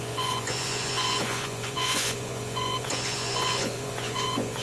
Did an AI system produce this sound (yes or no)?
yes